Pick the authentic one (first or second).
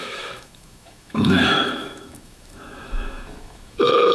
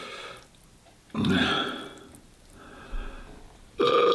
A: second